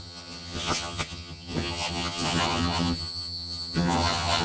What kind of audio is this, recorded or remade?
remade